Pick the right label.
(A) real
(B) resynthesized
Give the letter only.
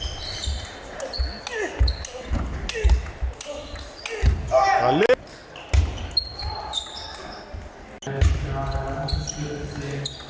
A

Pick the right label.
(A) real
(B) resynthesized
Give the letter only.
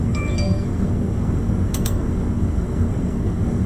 B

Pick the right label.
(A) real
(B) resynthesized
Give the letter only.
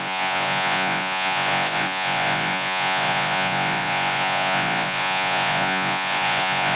B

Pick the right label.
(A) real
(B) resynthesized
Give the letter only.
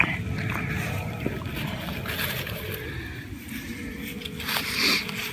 A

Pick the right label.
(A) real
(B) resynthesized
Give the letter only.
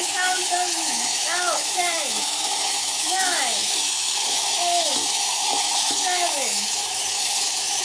B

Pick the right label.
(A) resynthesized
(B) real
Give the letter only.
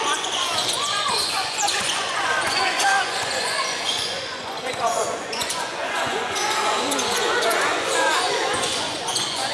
A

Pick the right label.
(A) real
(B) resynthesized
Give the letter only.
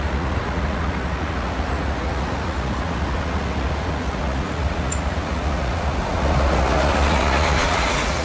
B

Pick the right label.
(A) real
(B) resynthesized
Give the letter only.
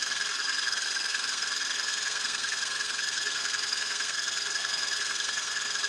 B